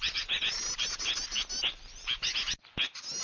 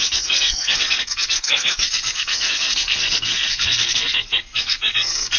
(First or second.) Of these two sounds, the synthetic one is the second